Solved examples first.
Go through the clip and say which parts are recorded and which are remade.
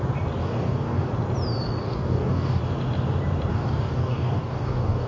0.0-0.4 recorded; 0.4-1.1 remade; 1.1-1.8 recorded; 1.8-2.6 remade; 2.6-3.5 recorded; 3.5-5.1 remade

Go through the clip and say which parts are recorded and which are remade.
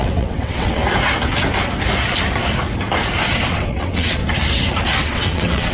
0.0-0.8 remade; 0.8-3.5 recorded; 3.5-4.2 remade; 4.2-5.0 recorded; 5.0-5.7 remade